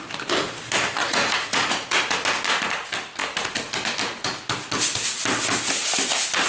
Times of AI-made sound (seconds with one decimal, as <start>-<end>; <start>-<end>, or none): 1.0-2.0